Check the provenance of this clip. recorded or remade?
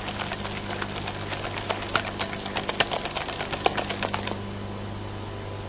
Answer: recorded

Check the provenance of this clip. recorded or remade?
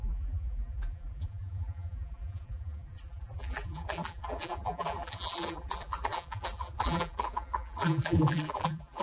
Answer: remade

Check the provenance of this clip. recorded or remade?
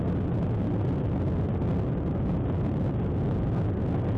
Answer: recorded